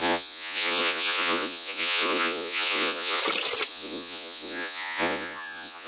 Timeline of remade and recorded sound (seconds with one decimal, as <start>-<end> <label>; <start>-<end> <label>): 0.0-3.2 remade; 3.2-3.7 recorded; 3.7-5.9 remade